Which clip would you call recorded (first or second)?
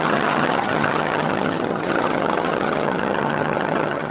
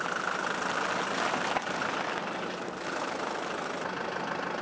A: second